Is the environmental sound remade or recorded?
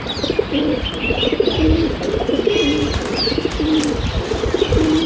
recorded